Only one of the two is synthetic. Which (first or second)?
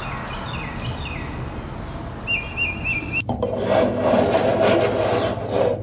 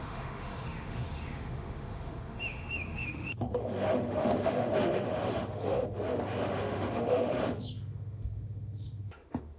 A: second